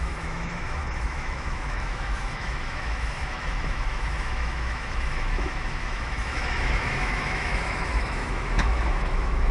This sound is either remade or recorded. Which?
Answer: remade